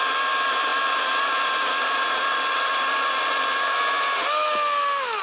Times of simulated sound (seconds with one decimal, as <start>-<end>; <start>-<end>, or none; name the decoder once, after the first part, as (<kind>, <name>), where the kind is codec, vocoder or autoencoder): none